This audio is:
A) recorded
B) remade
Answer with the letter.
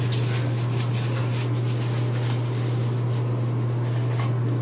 A